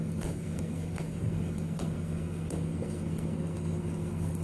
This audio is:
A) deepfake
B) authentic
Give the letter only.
A